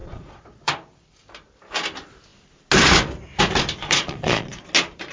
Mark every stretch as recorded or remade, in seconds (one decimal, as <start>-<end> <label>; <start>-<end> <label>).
0.0-0.7 remade; 0.7-3.8 recorded; 3.8-4.6 remade; 4.6-5.1 recorded